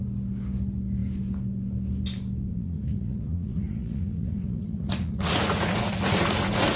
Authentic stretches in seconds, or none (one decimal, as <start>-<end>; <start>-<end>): 0.0-2.5